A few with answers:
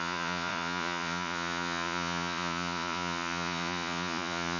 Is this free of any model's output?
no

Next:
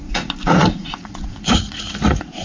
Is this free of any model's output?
no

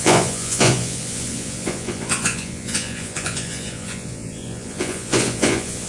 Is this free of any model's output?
no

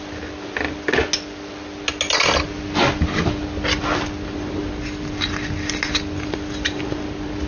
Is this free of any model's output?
yes